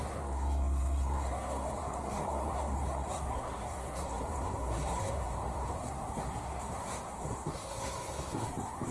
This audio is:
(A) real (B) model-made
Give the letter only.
B